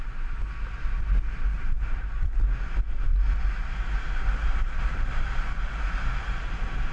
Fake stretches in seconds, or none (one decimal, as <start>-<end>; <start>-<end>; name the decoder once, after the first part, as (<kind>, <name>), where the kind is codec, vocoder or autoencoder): none